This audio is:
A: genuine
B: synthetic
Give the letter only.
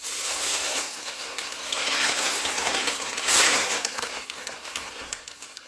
B